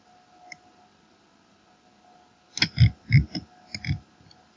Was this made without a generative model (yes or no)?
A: yes